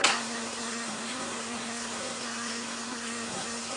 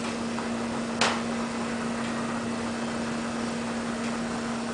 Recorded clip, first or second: second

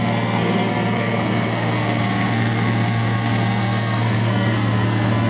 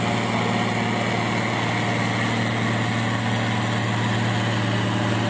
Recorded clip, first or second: second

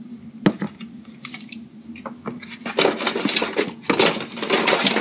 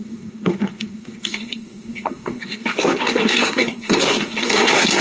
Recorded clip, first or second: first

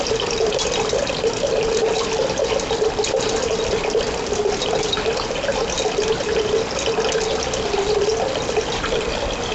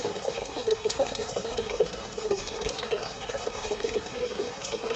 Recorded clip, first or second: first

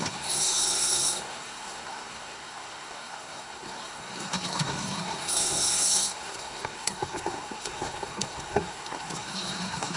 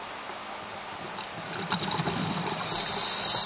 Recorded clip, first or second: second